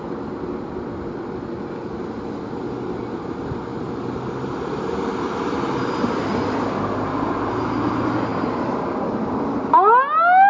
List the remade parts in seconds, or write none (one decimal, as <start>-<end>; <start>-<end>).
none